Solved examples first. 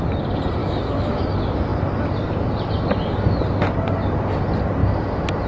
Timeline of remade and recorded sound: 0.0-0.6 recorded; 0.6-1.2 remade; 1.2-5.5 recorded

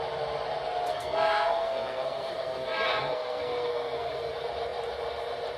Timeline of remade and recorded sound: 0.0-0.9 recorded; 0.9-4.3 remade; 4.3-5.6 recorded

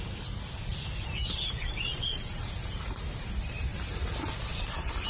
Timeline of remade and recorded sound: 0.0-1.6 recorded; 1.6-2.5 remade; 2.5-5.1 recorded

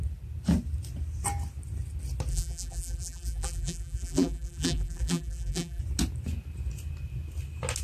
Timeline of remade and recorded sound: 0.0-2.3 recorded; 2.3-5.8 remade; 5.8-7.8 recorded

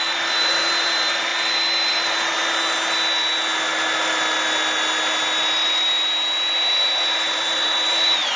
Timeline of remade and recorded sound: 0.0-1.3 remade; 1.3-1.9 recorded; 1.9-2.4 remade; 2.4-7.2 recorded; 7.2-8.4 remade